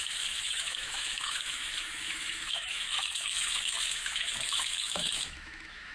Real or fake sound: fake